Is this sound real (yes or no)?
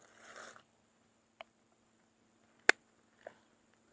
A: yes